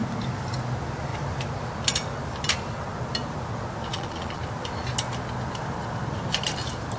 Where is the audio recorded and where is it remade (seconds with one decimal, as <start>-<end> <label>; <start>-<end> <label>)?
0.0-3.9 recorded; 3.9-4.4 remade; 4.4-7.0 recorded